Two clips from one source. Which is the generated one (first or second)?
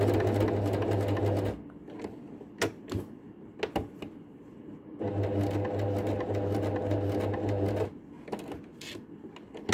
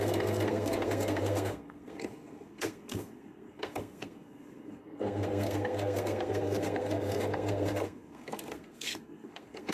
second